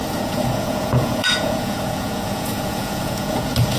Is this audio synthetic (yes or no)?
yes